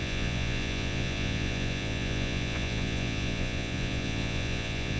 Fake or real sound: fake